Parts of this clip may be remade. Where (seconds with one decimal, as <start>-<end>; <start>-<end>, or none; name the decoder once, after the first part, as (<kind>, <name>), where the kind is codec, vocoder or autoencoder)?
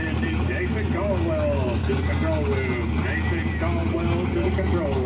none